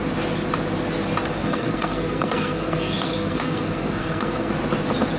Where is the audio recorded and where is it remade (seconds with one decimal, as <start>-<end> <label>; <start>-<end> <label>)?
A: 0.0-1.4 recorded; 1.4-4.5 remade; 4.5-5.2 recorded